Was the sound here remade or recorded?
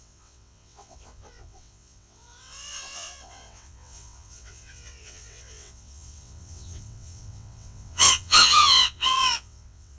remade